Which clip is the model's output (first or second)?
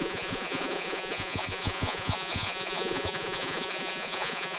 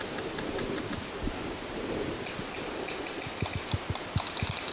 first